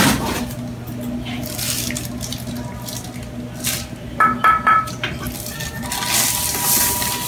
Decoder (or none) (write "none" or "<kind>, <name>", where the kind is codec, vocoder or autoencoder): none